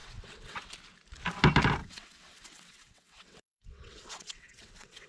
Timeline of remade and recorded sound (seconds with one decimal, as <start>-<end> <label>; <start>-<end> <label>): 0.0-0.7 remade; 0.7-1.8 recorded; 1.8-5.1 remade